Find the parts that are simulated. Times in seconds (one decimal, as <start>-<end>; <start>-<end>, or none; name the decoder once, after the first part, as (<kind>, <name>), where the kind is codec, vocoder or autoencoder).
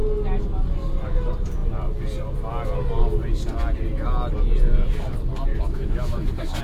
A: 5.5-6.6 (autoencoder, DAC-VAE)